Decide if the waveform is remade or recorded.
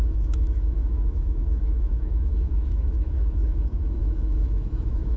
remade